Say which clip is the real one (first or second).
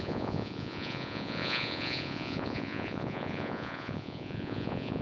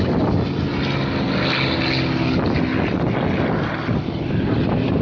second